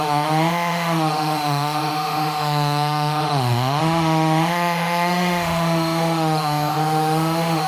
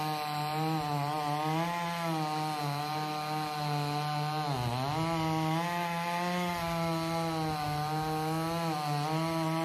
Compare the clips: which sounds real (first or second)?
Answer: second